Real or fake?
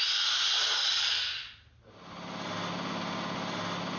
real